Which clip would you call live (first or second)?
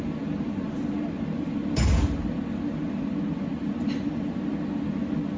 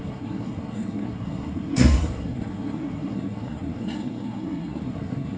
first